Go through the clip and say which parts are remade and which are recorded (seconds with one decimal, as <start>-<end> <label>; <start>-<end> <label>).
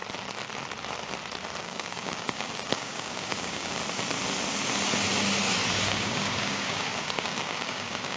0.0-1.6 recorded; 1.6-3.8 remade; 3.8-5.9 recorded; 5.9-8.2 remade